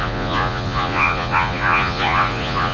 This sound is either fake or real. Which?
fake